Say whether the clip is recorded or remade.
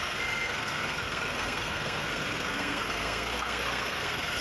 remade